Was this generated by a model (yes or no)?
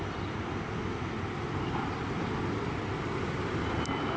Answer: yes